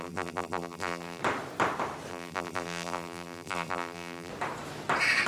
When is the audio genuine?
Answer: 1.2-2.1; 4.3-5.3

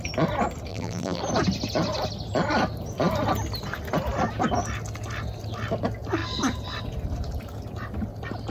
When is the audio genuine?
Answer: 0.0-0.7; 1.2-8.5

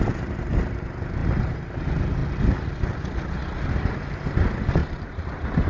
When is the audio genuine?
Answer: 0.0-1.2; 1.8-4.8; 5.3-5.7

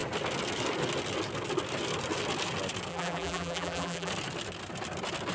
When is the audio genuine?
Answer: 0.0-2.9; 4.1-5.3

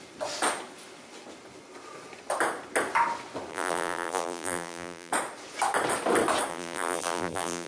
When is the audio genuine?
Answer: 0.0-3.5; 5.1-6.5

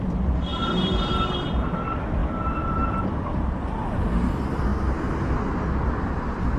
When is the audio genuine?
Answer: 0.0-0.5; 1.8-6.6

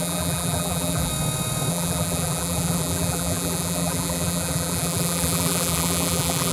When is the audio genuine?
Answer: 1.1-1.7